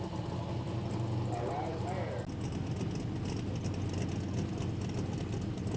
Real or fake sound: real